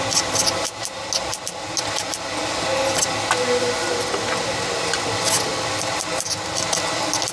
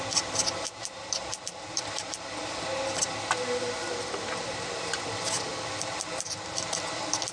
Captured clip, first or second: first